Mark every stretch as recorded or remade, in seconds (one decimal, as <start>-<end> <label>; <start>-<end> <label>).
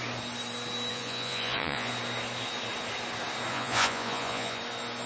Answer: 0.0-0.9 recorded; 0.9-1.9 remade; 1.9-3.5 recorded; 3.5-4.6 remade; 4.6-5.1 recorded